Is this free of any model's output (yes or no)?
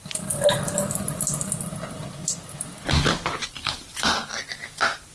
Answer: yes